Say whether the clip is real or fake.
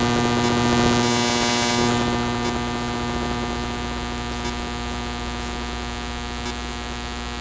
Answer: real